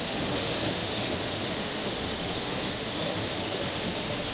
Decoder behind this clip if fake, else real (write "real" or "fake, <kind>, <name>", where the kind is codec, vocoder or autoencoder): fake, autoencoder, DAC-VAE